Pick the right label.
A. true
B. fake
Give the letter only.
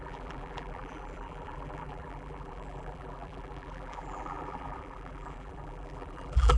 B